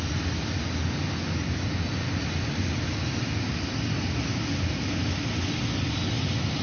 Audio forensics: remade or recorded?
recorded